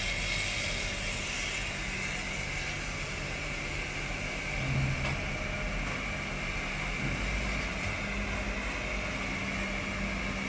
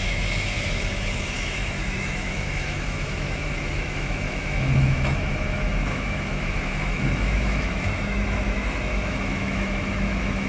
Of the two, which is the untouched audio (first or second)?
first